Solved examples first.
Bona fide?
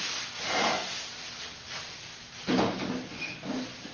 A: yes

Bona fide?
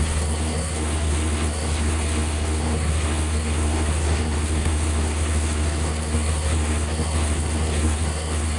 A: no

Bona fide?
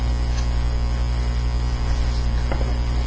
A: yes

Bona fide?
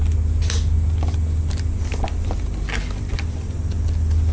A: yes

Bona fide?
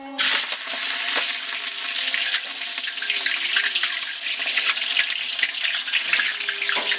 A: yes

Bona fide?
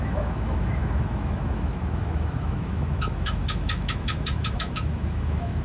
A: no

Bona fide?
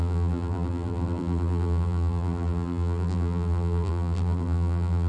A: no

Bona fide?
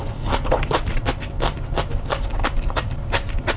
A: yes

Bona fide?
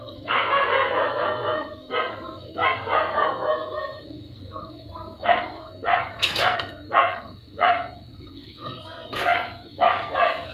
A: no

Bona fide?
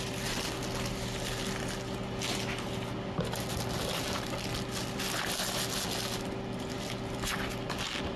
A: yes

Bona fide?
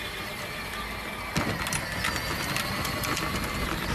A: yes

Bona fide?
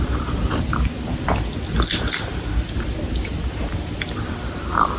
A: no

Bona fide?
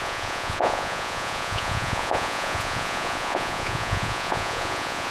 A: no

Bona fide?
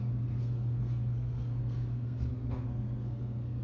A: no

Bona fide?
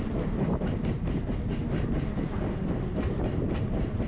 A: no